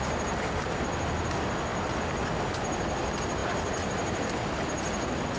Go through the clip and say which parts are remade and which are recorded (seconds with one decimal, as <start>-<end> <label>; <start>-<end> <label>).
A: 0.0-3.4 recorded; 3.4-4.3 remade; 4.3-5.4 recorded